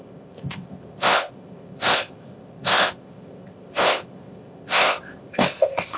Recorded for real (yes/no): no